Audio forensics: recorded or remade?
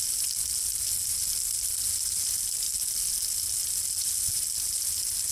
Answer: recorded